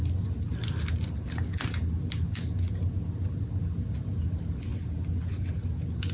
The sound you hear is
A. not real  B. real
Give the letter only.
B